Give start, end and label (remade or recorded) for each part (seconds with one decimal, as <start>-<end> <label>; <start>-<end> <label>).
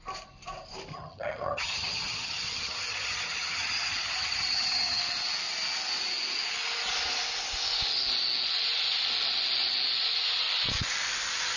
0.0-0.9 recorded; 0.9-5.0 remade; 5.0-11.6 recorded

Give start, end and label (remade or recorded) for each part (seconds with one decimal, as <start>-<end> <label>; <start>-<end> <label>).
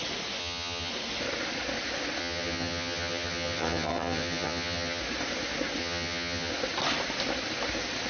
0.0-0.4 recorded; 0.4-0.9 remade; 0.9-2.2 recorded; 2.2-5.0 remade; 5.0-5.8 recorded; 5.8-6.5 remade; 6.5-8.1 recorded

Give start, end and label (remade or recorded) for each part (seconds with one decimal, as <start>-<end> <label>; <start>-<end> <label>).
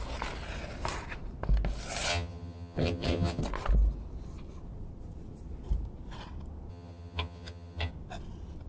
0.0-2.1 recorded; 2.1-3.4 remade; 3.4-6.7 recorded; 6.7-7.9 remade; 7.9-8.7 recorded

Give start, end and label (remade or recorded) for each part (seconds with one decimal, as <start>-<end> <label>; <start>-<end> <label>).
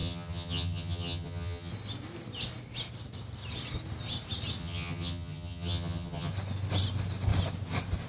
0.0-1.7 remade; 1.7-4.6 recorded; 4.6-6.3 remade; 6.3-8.1 recorded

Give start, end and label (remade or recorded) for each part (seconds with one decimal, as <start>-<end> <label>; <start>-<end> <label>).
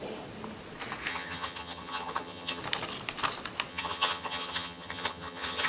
0.0-1.1 recorded; 1.1-2.6 remade; 2.6-3.7 recorded; 3.7-5.7 remade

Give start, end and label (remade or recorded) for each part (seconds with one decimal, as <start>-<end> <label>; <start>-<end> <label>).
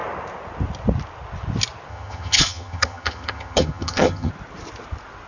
0.0-1.9 recorded; 1.9-4.3 remade; 4.3-5.3 recorded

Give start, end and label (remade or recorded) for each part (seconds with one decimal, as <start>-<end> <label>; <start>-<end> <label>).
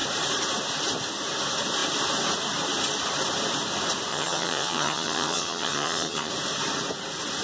0.0-4.1 recorded; 4.1-6.3 remade; 6.3-7.4 recorded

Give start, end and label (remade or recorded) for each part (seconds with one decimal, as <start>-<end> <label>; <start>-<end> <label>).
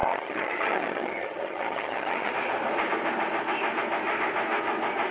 0.0-2.3 remade; 2.3-5.1 recorded